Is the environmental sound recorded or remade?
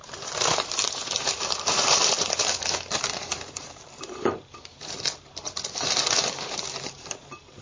remade